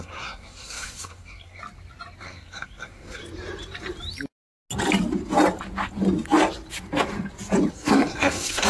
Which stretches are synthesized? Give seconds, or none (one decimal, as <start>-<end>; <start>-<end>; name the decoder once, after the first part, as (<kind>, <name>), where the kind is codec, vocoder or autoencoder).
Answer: 0.0-1.6 (codec, SNAC); 2.2-3.2; 7.7-8.7